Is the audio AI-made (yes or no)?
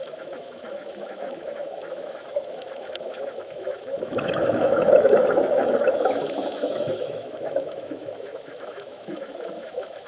yes